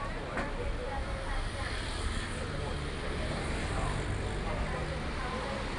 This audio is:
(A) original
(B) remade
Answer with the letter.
A